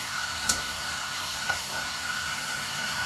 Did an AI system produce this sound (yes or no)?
yes